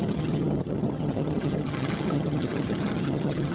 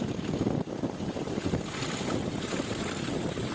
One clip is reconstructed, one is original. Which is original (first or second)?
second